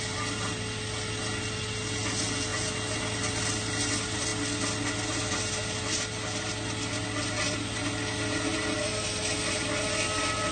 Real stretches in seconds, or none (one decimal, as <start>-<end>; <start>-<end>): 0.0-10.5